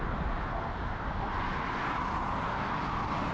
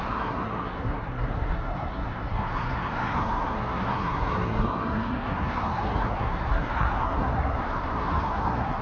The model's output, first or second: second